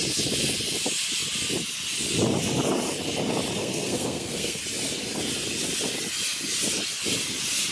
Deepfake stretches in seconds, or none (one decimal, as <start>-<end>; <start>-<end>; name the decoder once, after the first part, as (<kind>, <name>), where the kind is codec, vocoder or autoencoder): 3.6-4.6 (codec, SNAC)